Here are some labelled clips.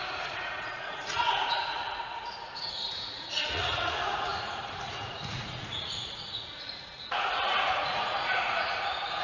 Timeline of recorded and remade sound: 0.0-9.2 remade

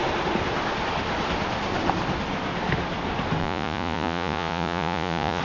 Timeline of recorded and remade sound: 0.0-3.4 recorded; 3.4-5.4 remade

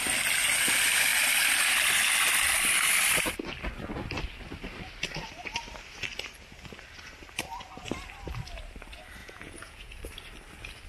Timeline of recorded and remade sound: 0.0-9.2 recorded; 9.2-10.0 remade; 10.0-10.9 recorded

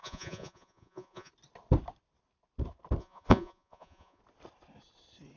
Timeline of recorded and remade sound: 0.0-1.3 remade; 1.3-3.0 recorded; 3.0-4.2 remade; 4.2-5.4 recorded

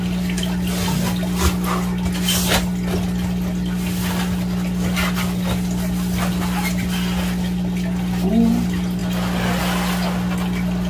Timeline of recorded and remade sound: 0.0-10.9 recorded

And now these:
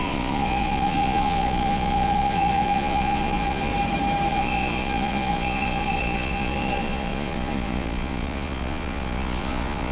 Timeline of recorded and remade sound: 0.0-3.7 remade; 3.7-4.3 recorded; 4.3-9.9 remade